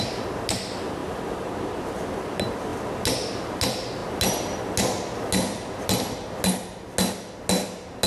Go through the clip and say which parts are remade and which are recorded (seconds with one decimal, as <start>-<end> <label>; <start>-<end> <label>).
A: 0.0-1.0 recorded; 1.0-1.5 remade; 1.5-8.1 recorded